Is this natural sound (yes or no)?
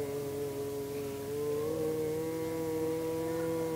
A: yes